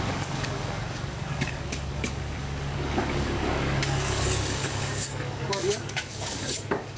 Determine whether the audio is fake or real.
fake